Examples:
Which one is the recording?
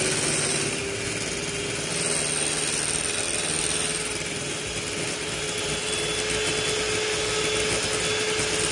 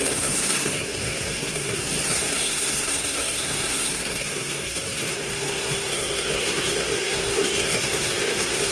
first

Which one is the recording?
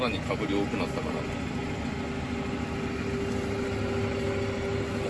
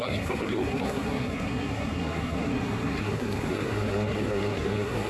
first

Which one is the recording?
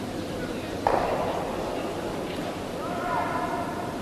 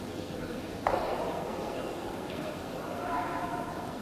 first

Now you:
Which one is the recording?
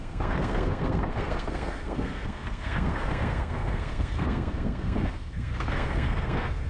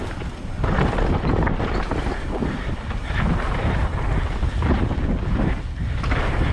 second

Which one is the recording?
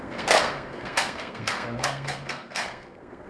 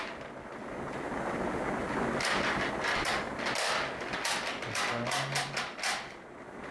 second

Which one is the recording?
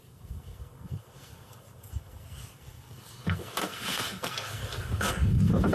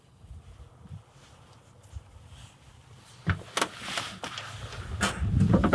second